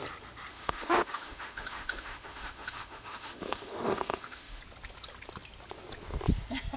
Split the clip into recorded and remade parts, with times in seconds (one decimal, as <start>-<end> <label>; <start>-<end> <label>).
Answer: 0.0-0.5 recorded; 0.5-4.6 remade; 4.6-6.8 recorded